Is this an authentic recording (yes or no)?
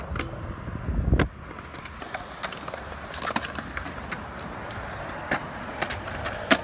yes